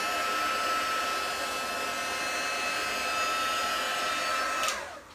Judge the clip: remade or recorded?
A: recorded